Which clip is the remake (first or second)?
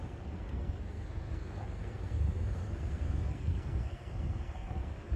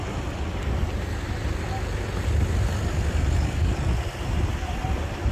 first